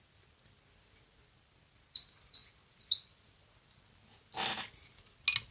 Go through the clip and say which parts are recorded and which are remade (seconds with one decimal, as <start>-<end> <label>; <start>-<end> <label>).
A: 0.0-5.5 recorded